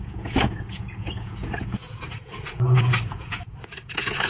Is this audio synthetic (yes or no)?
yes